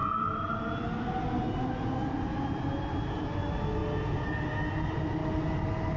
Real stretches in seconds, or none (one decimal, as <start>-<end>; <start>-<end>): 0.0-6.0